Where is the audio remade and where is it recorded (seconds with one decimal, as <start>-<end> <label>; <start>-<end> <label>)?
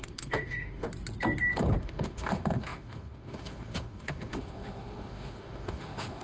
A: 0.0-0.9 remade; 0.9-1.8 recorded; 1.8-6.2 remade